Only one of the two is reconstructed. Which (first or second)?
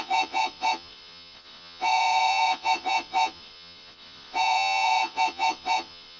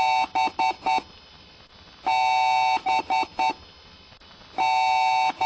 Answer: first